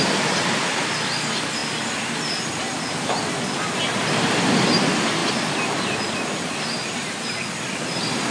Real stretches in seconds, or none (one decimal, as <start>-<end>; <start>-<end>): 0.0-8.3